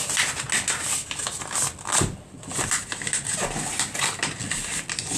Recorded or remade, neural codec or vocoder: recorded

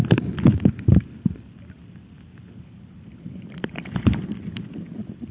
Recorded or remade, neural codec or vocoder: remade, vocoder, BigVGAN v2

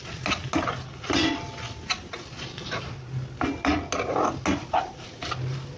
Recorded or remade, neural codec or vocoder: recorded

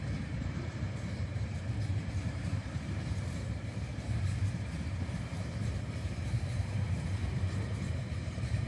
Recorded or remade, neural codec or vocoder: remade, vocoder, BigVGAN v2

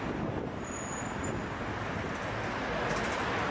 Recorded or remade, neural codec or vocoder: recorded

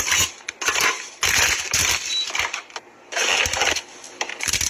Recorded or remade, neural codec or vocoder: recorded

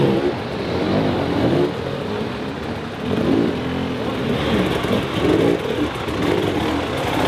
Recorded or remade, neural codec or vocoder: recorded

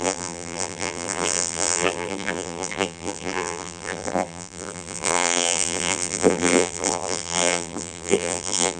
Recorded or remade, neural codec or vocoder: remade, vocoder, BigVGAN v2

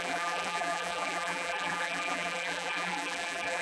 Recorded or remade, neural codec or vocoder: remade, vocoder, BigVGAN v2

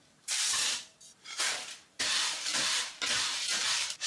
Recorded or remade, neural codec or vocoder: remade, vocoder, BigVGAN v2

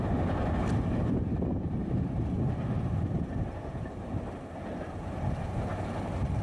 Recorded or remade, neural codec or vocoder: remade, vocoder, BigVGAN v2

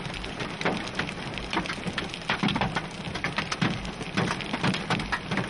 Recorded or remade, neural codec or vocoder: remade, vocoder, BigVGAN v2